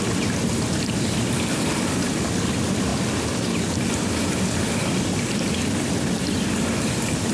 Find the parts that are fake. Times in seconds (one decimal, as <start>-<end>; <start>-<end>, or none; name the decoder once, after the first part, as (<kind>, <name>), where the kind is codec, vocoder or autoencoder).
none